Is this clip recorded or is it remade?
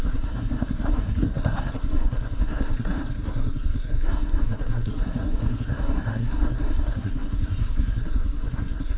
remade